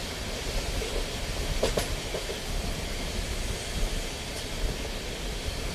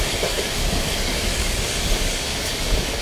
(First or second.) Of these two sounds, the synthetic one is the second